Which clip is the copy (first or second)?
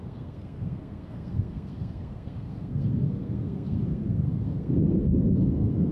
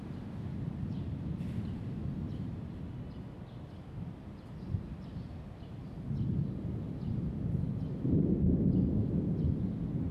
first